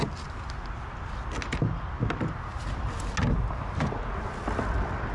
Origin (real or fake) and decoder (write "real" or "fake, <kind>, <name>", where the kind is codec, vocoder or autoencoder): real